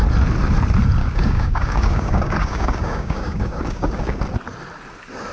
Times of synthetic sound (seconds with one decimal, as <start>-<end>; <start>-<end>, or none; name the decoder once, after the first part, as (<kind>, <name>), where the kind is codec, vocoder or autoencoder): 1.0-4.2 (codec, DAC)